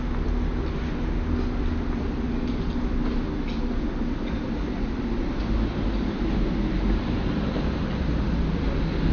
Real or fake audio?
real